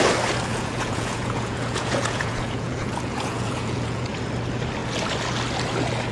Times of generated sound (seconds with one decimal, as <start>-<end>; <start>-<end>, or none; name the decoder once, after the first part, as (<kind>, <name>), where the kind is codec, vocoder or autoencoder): 0.5-4.2 (vocoder, Vocos)